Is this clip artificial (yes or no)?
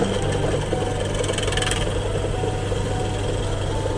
no